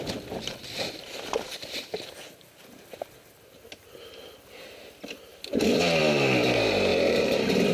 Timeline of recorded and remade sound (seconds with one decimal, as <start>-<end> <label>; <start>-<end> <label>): 0.0-0.6 recorded; 0.6-2.1 remade; 2.1-5.3 recorded; 5.3-6.0 remade; 6.0-6.9 recorded; 6.9-7.7 remade